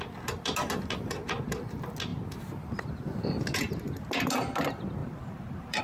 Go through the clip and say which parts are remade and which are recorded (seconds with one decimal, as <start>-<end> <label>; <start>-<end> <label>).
0.0-5.0 recorded; 5.0-5.8 remade